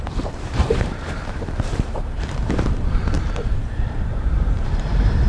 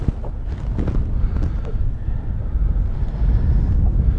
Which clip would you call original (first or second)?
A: second